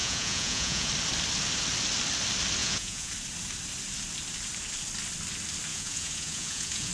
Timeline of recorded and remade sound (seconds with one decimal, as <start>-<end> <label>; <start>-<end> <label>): 0.0-0.9 remade; 0.9-2.6 recorded; 2.6-3.1 remade; 3.1-5.7 recorded; 5.7-6.9 remade